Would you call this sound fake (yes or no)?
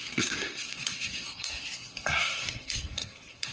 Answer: yes